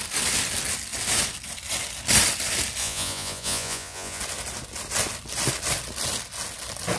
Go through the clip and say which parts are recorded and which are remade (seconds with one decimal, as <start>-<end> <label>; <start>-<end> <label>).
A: 0.0-2.8 recorded; 2.8-4.2 remade; 4.2-7.0 recorded